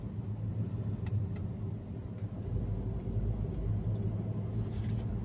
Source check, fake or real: real